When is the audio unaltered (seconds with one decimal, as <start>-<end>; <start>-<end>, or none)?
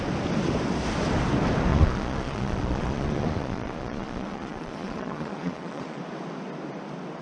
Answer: 0.0-1.7; 6.0-7.2